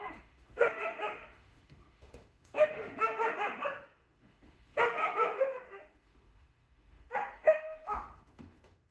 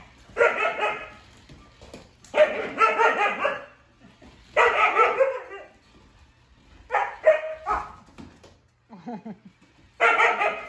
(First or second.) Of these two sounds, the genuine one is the second